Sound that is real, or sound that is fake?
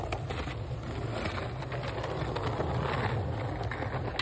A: real